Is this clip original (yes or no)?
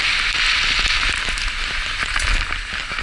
yes